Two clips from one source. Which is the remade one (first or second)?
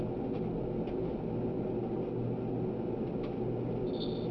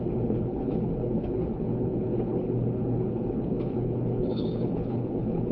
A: second